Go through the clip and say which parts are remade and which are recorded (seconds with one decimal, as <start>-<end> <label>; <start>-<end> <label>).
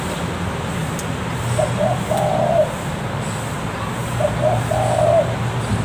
0.0-4.0 recorded; 4.0-4.7 remade; 4.7-5.8 recorded